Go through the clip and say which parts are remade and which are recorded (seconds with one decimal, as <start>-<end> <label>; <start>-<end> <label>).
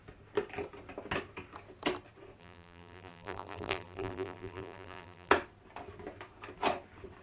0.0-2.4 recorded; 2.4-5.3 remade; 5.3-7.2 recorded